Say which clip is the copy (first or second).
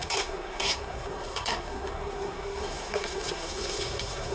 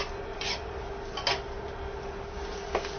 first